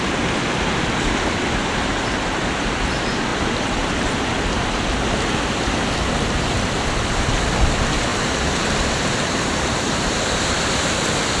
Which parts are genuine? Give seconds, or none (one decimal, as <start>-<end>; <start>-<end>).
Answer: 0.0-1.6; 2.8-3.3; 4.4-8.1; 10.6-11.4

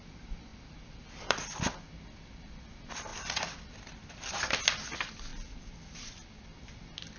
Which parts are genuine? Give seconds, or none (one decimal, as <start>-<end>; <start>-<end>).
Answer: 0.0-0.5; 2.7-3.1; 4.5-5.3; 6.6-7.2

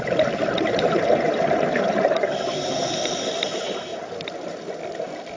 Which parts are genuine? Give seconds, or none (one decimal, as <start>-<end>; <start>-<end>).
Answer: 0.0-0.4; 2.3-3.9; 4.6-5.4

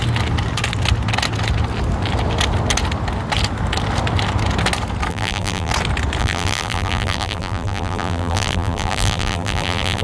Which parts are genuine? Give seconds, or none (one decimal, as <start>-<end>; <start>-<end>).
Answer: 0.0-5.1; 5.7-6.2

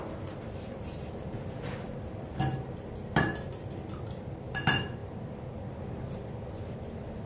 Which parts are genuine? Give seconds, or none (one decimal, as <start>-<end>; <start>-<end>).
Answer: 0.0-7.3

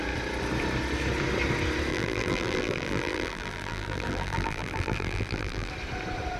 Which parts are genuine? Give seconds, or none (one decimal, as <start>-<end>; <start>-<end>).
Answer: 0.0-1.9; 5.7-6.4